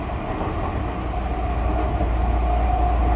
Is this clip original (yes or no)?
yes